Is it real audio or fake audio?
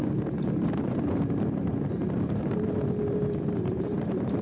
fake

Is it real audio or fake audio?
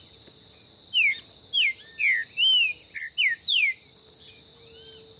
real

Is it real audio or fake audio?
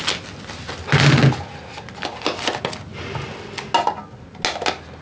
real